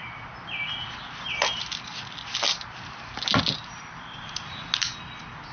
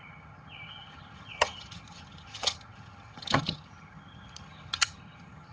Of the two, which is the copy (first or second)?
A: second